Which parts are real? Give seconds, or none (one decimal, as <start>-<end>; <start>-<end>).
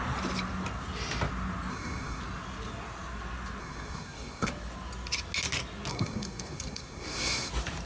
0.0-1.7; 2.2-3.6; 4.5-5.9; 7.5-7.9